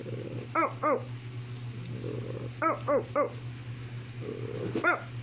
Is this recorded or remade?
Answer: recorded